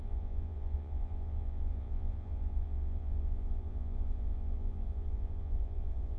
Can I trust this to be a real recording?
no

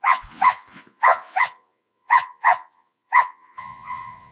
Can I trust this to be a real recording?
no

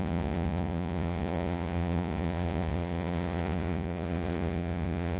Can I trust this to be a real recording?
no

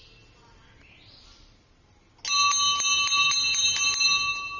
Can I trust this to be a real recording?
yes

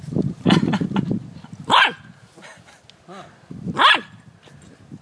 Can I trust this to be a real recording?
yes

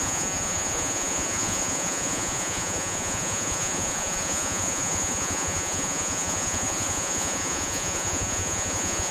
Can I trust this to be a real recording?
no